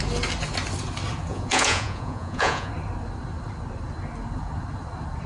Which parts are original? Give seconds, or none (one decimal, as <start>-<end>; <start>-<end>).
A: 0.0-1.3; 2.7-5.3